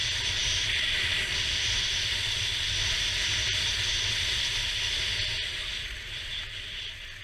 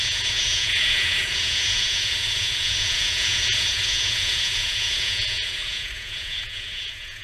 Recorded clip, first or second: first